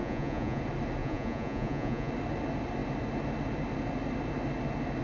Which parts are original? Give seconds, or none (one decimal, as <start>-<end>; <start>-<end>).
0.6-1.0; 2.1-5.0